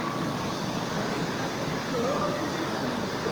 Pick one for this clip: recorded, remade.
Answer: remade